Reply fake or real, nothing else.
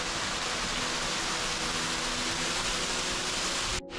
real